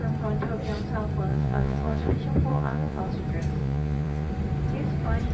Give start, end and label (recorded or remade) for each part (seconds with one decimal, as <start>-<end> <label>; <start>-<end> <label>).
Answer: 0.0-1.3 recorded; 1.3-2.1 remade; 2.1-2.5 recorded; 2.5-3.0 remade; 3.0-3.6 recorded; 3.6-4.3 remade; 4.3-5.3 recorded